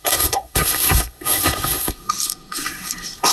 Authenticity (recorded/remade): remade